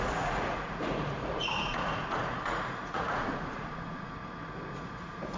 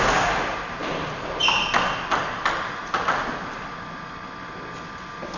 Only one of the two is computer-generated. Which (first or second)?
first